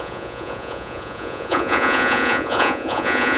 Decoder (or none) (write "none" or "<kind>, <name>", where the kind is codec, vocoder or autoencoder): vocoder, Vocos